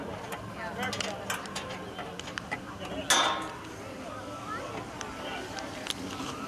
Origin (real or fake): real